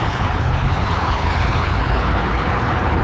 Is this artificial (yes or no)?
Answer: yes